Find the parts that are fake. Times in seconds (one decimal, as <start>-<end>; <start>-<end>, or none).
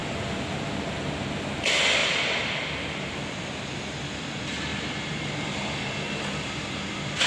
none